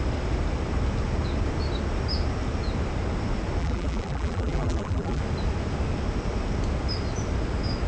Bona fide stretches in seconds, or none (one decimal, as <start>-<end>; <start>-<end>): 0.0-3.6; 5.2-7.9